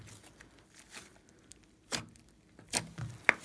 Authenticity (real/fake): real